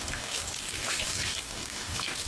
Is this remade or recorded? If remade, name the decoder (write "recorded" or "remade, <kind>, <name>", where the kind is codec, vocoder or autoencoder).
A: remade, codec, DAC